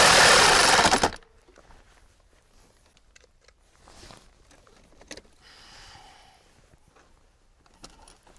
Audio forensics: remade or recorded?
recorded